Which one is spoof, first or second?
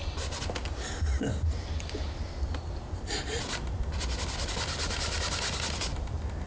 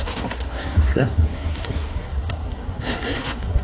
second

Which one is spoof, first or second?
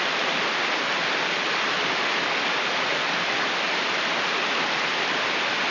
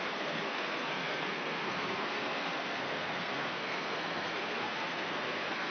second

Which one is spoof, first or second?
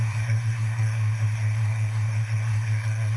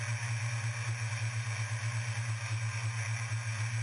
first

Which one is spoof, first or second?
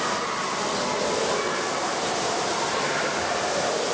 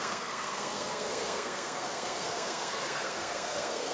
second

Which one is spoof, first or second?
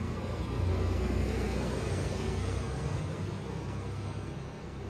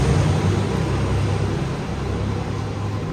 first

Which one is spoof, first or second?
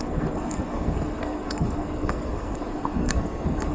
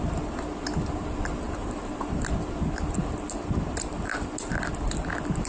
first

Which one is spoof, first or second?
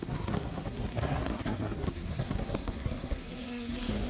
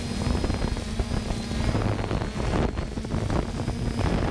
first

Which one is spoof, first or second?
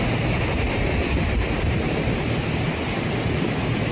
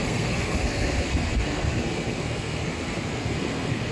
second